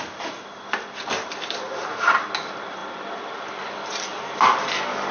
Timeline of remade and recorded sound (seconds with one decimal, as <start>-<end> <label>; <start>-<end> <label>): 0.0-5.1 recorded